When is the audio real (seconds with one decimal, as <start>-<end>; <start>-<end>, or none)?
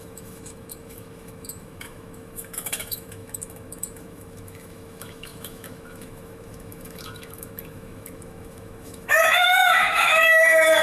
none